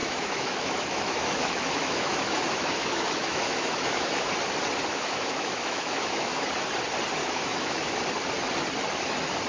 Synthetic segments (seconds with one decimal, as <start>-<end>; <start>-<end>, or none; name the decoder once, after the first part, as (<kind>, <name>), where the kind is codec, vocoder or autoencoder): 0.0-4.3 (autoencoder, DAC-VAE); 4.9-6.4; 7.2-7.9